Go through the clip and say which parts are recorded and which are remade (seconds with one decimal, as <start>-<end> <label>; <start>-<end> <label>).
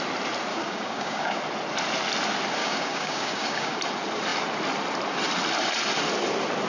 0.0-0.5 recorded; 0.5-1.4 remade; 1.4-2.6 recorded; 2.6-3.8 remade; 3.8-6.7 recorded